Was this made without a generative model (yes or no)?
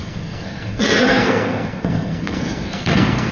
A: no